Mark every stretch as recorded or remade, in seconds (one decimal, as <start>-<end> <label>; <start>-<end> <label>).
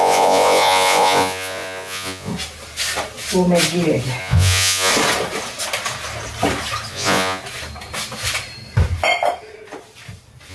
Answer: 0.0-2.3 remade; 2.3-4.2 recorded; 4.2-4.9 remade; 4.9-6.9 recorded; 6.9-7.4 remade; 7.4-10.5 recorded